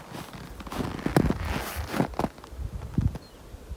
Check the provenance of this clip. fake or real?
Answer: real